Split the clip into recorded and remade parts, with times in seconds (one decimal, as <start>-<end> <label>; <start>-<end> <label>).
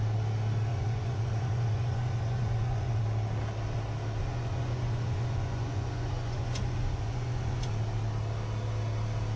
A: 0.0-0.7 recorded; 0.7-3.0 remade; 3.0-4.2 recorded; 4.2-7.7 remade; 7.7-9.4 recorded